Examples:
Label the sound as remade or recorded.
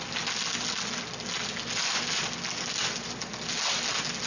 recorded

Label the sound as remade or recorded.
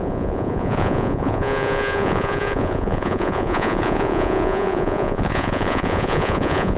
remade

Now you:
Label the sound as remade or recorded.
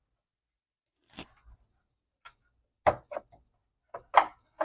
recorded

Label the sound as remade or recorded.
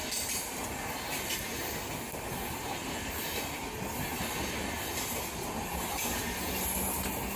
recorded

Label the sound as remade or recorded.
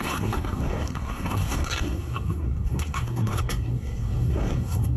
remade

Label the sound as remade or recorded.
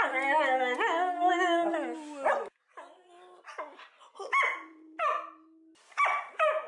recorded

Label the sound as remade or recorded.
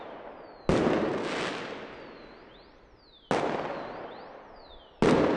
recorded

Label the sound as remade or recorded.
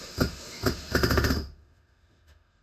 remade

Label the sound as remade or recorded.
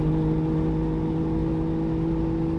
recorded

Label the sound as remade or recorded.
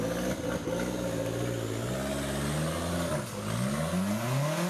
recorded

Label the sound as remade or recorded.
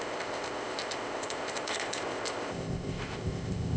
remade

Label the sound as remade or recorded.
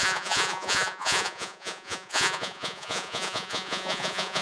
remade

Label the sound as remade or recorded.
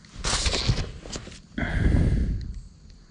recorded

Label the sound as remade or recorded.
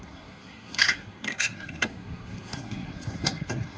remade